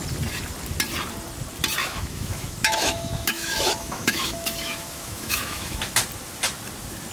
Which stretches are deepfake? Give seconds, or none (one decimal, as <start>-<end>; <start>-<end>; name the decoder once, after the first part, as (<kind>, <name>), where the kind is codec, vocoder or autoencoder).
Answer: 1.8-5.8 (autoencoder, DAC-VAE)